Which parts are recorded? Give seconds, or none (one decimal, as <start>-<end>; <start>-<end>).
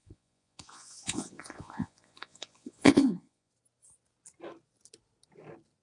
3.5-5.8